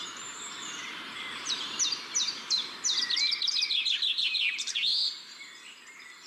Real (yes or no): no